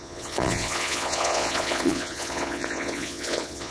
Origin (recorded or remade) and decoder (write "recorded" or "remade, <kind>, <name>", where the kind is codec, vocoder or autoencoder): remade, vocoder, Vocos